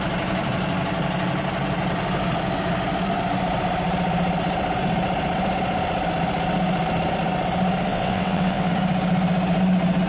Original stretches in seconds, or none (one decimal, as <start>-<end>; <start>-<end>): 0.0-7.9; 8.7-10.1